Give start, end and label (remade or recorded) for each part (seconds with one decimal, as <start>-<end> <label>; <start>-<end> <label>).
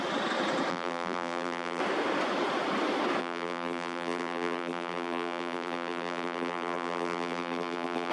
0.0-0.7 recorded; 0.7-1.8 remade; 1.8-3.2 recorded; 3.2-8.1 remade